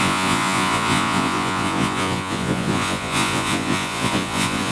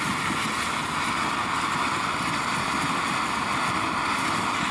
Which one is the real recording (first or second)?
second